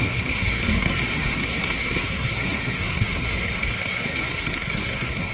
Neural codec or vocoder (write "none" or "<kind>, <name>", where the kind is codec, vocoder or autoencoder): codec, SNAC